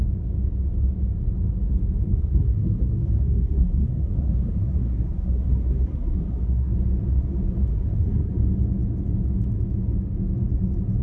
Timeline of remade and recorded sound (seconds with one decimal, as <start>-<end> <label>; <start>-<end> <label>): 0.0-2.1 recorded; 2.1-6.7 remade; 6.7-7.7 recorded; 7.7-8.3 remade; 8.3-11.0 recorded